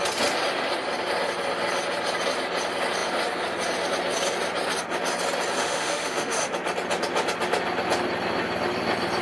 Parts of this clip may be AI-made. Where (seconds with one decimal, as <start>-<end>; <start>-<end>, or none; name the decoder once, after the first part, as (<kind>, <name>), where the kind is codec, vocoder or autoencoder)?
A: 5.6-6.5 (autoencoder, DAC-VAE)